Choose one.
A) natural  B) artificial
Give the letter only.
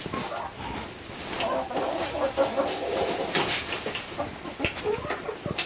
A